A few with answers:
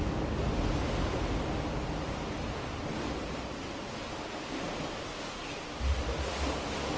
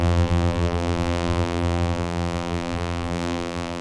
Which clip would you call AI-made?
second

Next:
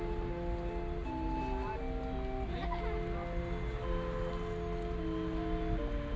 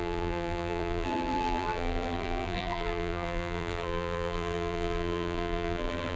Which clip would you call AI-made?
second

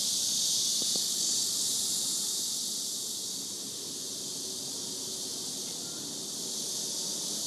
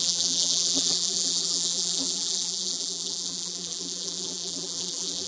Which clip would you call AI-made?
second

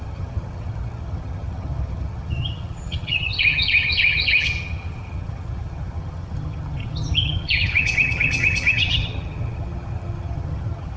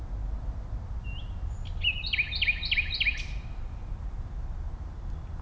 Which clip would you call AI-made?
first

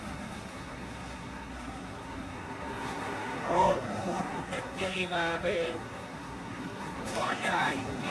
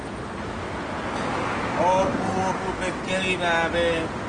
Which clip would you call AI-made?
first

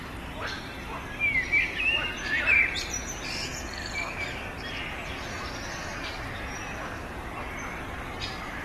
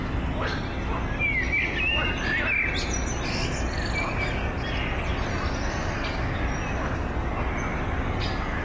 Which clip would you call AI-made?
first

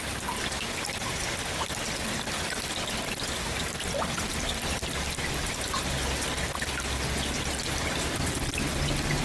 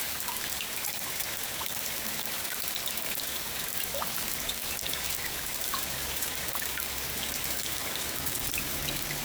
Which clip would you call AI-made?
second